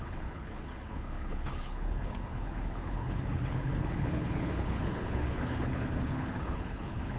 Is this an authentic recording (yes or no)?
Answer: no